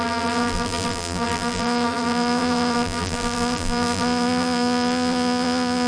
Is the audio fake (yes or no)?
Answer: yes